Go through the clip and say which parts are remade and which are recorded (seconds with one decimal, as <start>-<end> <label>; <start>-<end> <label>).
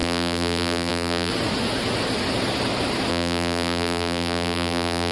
0.0-1.3 remade; 1.3-3.1 recorded; 3.1-5.1 remade